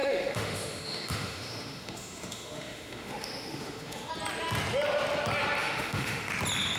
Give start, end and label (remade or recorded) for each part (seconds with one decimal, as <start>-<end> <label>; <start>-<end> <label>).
0.0-4.1 remade; 4.1-5.6 recorded; 5.6-6.3 remade; 6.3-6.8 recorded